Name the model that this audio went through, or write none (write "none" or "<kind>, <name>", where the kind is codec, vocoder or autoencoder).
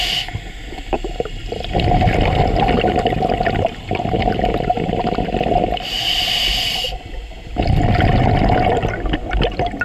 none